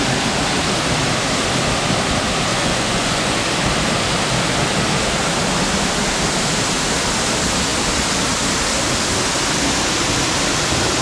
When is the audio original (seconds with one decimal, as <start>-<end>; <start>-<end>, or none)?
0.0-2.5; 3.4-11.0